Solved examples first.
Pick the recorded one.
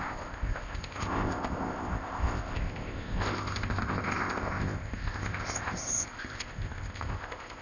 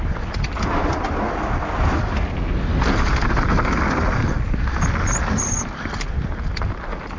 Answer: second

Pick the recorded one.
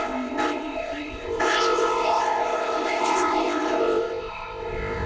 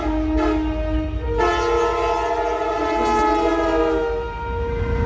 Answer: second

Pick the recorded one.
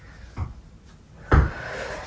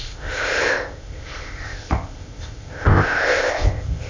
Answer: first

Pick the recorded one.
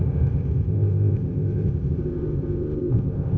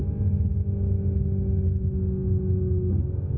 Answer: second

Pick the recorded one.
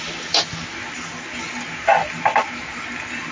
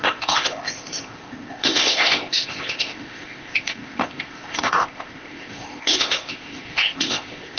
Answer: first